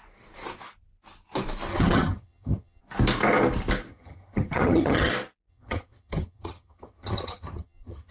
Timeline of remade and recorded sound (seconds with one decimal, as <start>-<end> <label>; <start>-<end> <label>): 0.0-1.7 recorded; 1.7-2.8 remade; 2.8-3.9 recorded; 3.9-5.1 remade; 5.1-5.5 recorded; 5.5-8.1 remade

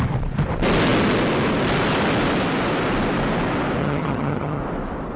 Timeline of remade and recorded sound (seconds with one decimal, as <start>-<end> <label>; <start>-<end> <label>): 0.0-3.8 recorded; 3.8-4.6 remade; 4.6-5.2 recorded

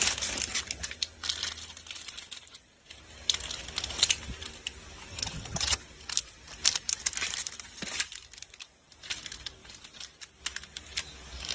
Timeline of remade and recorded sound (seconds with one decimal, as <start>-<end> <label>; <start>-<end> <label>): 0.0-5.1 recorded; 5.1-5.8 remade; 5.8-11.5 recorded

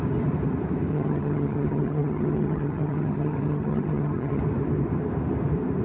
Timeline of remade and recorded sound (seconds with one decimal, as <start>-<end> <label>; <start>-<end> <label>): 0.0-0.9 recorded; 0.9-4.4 remade; 4.4-5.8 recorded

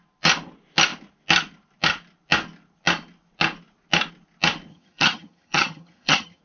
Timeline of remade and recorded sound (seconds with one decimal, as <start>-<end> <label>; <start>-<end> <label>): 0.0-4.7 recorded; 4.7-6.4 remade